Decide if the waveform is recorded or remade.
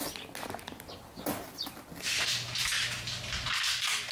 recorded